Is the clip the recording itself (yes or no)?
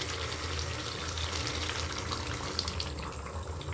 yes